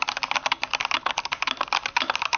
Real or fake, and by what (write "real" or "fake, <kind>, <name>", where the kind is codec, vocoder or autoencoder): real